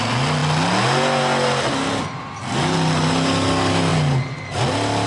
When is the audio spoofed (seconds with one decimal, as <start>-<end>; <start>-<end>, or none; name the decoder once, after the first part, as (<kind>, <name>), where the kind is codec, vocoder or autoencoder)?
none